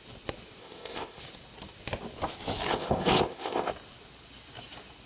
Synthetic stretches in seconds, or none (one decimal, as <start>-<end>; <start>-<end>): 0.6-1.2; 2.7-3.7

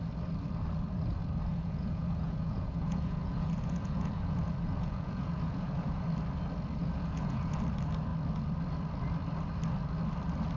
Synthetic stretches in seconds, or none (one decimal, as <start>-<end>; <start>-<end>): 1.5-6.0; 6.8-7.6